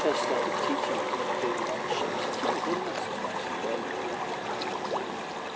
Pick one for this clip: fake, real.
real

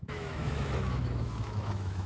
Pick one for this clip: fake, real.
fake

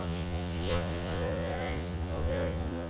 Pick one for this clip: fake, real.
fake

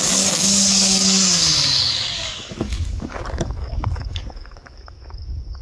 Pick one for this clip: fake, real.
fake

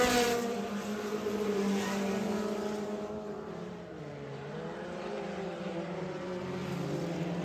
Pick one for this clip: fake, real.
fake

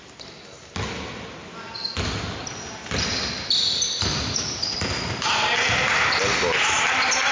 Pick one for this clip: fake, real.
real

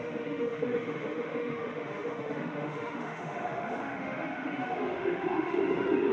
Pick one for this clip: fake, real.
fake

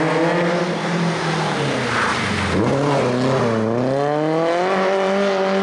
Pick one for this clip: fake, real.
real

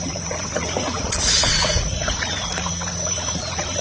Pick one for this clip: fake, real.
fake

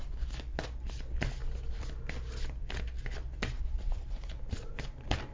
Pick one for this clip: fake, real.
real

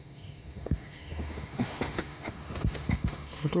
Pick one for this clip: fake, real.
fake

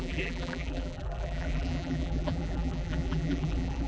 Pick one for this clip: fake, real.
fake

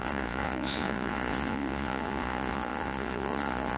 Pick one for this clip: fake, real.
fake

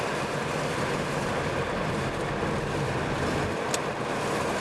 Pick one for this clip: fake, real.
real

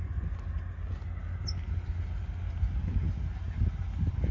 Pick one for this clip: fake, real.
real